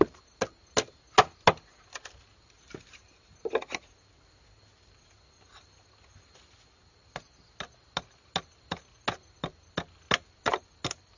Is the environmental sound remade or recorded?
recorded